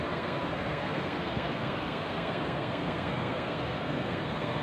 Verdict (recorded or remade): remade